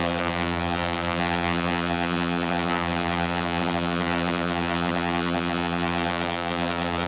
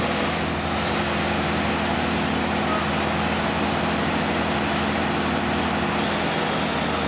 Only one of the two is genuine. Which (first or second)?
second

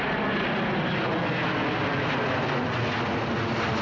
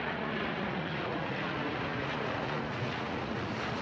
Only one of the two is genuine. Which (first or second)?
first